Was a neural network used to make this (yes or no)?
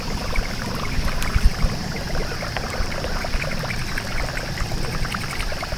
yes